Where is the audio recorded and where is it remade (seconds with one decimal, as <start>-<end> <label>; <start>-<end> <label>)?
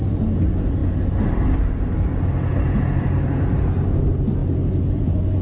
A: 0.0-4.4 recorded; 4.4-5.4 remade